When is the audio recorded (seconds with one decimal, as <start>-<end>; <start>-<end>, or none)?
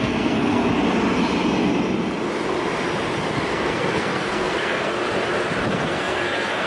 0.6-3.5; 5.0-5.7